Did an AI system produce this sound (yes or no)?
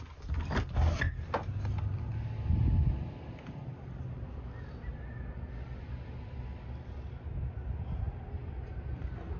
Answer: no